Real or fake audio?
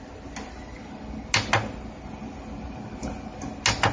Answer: real